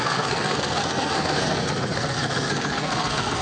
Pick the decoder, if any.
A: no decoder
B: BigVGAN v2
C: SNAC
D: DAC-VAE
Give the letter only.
C